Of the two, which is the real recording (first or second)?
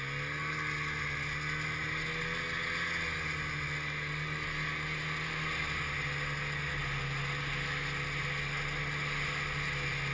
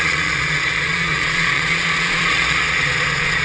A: first